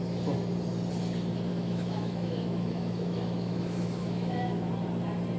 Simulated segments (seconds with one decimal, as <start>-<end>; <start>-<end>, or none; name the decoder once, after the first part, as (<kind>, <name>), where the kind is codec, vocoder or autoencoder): 1.5-4.7 (autoencoder, DAC-VAE)